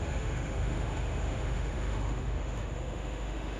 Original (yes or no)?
no